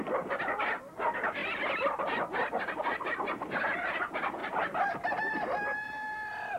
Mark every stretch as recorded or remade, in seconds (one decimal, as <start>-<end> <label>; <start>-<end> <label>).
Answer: 0.0-1.4 recorded; 1.4-3.1 remade; 3.1-4.4 recorded; 4.4-4.9 remade; 4.9-6.6 recorded